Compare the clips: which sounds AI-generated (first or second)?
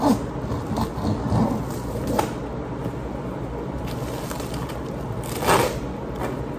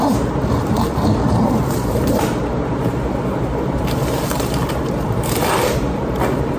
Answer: second